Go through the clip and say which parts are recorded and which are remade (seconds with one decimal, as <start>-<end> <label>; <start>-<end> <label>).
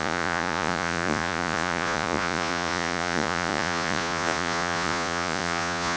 0.0-6.0 remade